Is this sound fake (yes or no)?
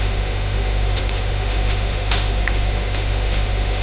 yes